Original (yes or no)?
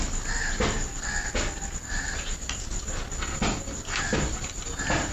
yes